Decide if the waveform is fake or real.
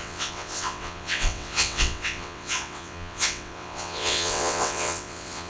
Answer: fake